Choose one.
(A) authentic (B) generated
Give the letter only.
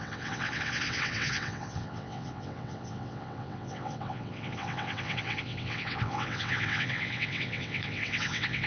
B